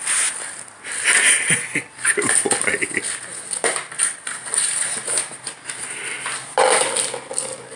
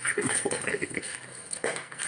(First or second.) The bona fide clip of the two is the first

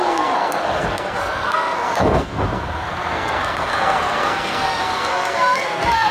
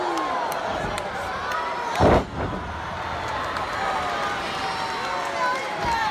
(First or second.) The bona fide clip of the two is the second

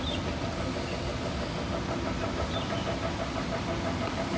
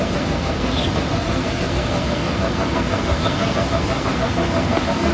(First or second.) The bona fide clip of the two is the first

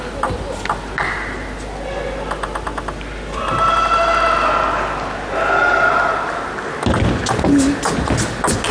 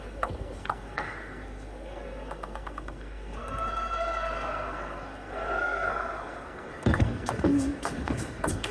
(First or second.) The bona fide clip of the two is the first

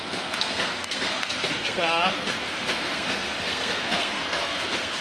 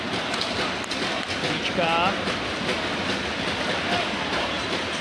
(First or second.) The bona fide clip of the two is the second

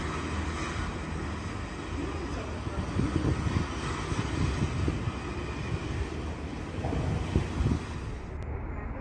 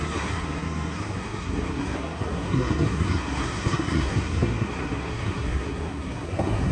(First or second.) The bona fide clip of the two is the first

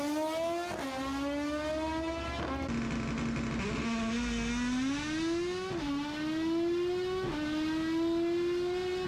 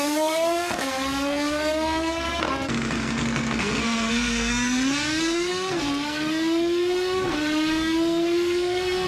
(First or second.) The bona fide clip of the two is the first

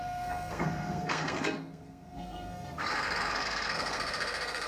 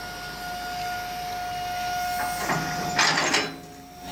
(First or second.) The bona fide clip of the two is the second